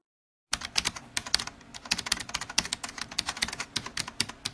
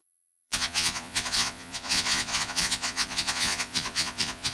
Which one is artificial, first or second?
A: second